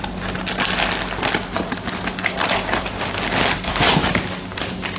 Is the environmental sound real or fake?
real